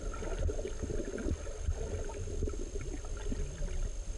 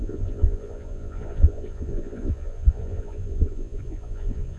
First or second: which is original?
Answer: first